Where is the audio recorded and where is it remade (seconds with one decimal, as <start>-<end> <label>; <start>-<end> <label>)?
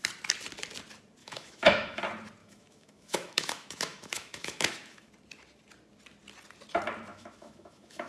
0.0-1.2 recorded; 1.2-2.0 remade; 2.0-2.4 recorded; 2.4-5.1 remade; 5.1-7.1 recorded; 7.1-8.1 remade